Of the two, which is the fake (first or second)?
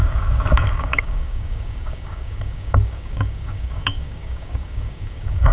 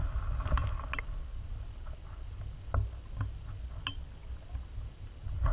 first